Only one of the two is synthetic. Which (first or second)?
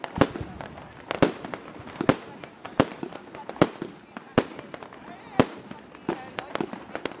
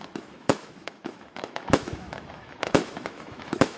second